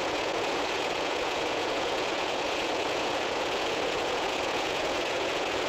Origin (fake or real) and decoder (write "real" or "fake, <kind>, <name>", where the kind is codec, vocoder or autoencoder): fake, vocoder, Vocos